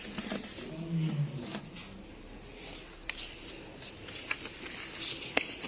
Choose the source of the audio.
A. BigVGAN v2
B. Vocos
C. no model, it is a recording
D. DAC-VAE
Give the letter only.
C